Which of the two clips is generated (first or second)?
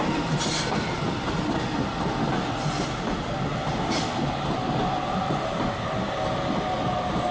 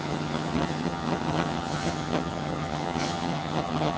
second